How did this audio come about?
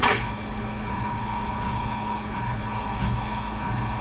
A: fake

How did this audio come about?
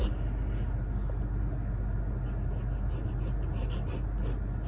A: real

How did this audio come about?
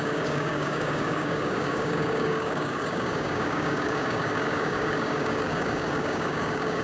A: fake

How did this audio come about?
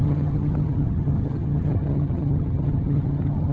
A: fake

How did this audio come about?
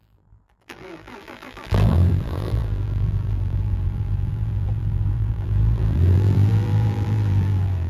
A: fake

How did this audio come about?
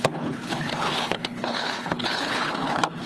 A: fake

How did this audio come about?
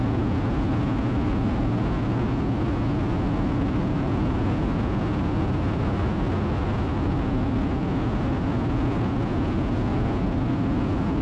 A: real